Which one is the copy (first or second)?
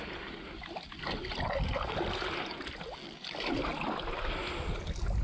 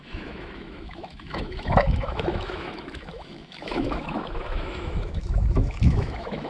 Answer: second